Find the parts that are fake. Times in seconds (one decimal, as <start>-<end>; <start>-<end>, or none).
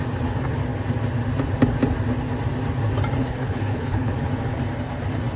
3.2-4.1